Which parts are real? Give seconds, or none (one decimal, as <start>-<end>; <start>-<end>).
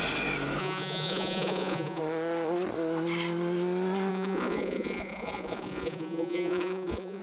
0.0-0.6; 2.0-4.1